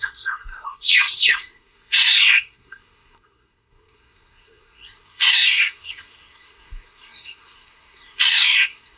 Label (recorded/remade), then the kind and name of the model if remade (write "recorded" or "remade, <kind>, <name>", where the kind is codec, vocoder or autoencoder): remade, codec, SNAC